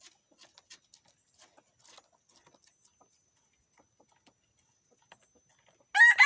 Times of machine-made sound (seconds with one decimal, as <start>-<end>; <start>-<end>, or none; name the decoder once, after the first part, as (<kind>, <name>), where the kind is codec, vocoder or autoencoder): none